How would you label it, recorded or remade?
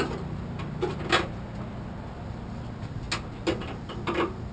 recorded